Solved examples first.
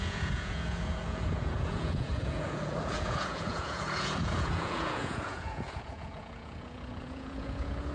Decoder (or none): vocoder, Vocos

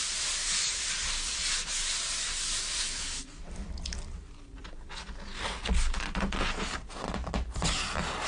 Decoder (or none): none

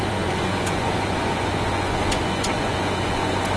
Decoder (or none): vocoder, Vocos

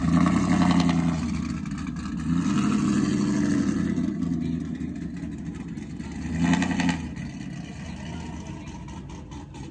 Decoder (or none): none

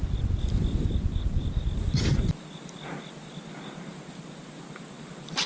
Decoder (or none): none